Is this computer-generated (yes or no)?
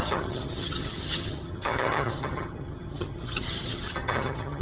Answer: yes